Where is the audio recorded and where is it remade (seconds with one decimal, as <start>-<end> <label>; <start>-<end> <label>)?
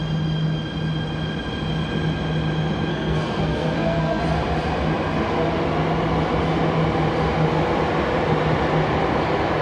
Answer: 0.0-2.9 recorded; 2.9-4.2 remade; 4.2-9.6 recorded